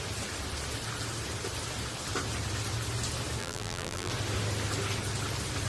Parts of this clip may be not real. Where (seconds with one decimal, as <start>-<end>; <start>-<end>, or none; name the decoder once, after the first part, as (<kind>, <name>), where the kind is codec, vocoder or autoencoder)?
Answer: 3.4-4.1 (vocoder, BigVGAN v2)